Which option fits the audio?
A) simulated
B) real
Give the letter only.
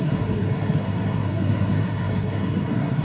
A